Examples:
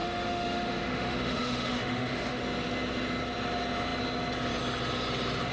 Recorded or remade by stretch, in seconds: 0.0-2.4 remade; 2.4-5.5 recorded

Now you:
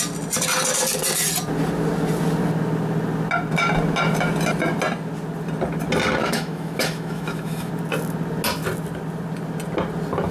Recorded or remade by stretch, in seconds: 0.0-6.2 recorded; 6.2-7.7 remade; 7.7-10.3 recorded

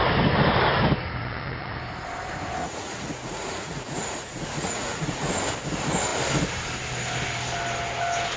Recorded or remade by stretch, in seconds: 0.0-1.2 recorded; 1.2-1.8 remade; 1.8-2.6 recorded; 2.6-5.3 remade; 5.3-8.4 recorded